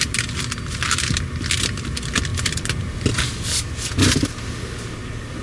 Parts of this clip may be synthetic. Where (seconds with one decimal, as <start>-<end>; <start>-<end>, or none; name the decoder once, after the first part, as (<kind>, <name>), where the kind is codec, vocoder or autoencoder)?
none